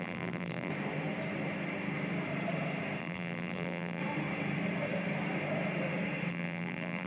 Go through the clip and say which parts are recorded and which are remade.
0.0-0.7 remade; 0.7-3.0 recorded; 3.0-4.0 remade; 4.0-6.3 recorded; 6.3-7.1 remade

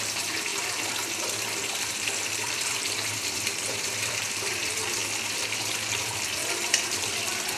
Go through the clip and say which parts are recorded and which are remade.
0.0-0.5 remade; 0.5-1.6 recorded; 1.6-5.0 remade; 5.0-6.1 recorded; 6.1-7.6 remade

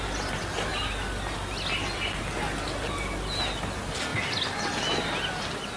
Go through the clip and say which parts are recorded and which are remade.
0.0-5.8 recorded

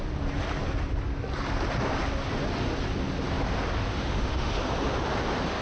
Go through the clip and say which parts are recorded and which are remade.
0.0-3.9 recorded; 3.9-4.5 remade; 4.5-5.6 recorded

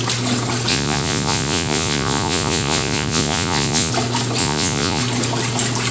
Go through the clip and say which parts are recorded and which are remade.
0.0-0.7 recorded; 0.7-3.9 remade; 3.9-4.4 recorded; 4.4-5.0 remade; 5.0-5.9 recorded

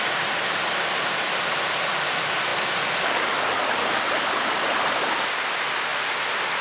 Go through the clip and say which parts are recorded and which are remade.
0.0-6.6 recorded